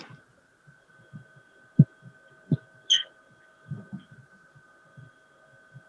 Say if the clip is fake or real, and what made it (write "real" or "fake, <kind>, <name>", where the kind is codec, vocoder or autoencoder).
real